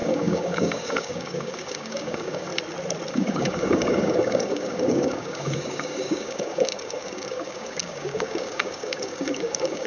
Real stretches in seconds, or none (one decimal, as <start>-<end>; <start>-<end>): 2.5-3.1